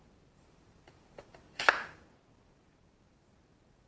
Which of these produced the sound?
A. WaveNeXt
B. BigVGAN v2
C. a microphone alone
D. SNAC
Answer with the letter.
B